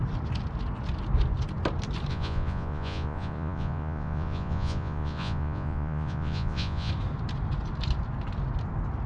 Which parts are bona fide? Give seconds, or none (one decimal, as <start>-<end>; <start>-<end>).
0.0-2.1; 6.9-9.1